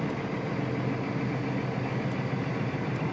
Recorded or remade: recorded